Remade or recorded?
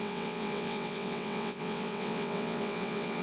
remade